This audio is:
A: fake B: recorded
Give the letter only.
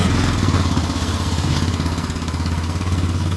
A